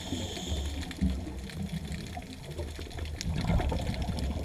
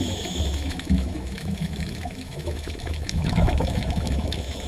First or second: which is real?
first